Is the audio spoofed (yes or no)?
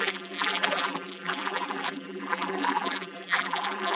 yes